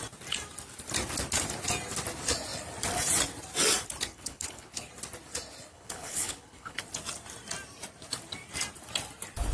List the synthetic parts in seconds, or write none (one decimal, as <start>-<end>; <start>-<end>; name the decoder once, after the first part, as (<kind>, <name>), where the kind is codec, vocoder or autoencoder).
4.1-4.9 (codec, HILCodec); 5.7-6.8